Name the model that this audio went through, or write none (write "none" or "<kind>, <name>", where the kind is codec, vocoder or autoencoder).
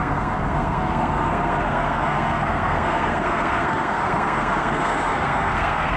codec, SNAC